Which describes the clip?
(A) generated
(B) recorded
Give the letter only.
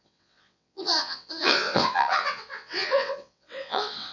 A